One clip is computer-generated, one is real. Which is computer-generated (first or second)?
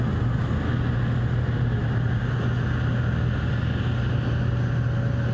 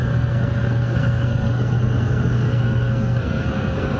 second